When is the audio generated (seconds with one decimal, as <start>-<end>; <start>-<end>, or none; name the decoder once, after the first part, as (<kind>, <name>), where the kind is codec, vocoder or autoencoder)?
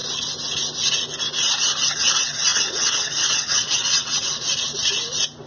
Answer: 2.5-4.5 (vocoder, WaveNeXt)